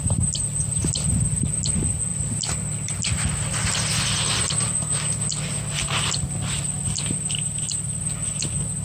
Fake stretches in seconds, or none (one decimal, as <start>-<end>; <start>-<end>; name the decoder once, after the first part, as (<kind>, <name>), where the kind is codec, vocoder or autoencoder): none